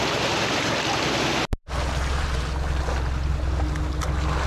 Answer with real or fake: real